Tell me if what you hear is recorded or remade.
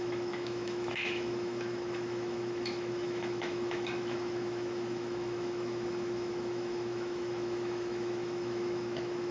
remade